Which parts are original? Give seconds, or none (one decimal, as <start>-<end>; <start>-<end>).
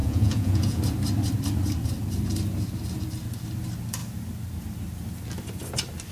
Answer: 0.8-6.1